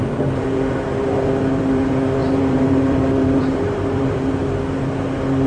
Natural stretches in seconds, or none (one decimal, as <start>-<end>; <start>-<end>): 4.4-5.5